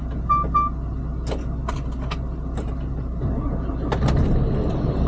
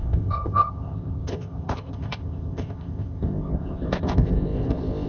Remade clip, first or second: second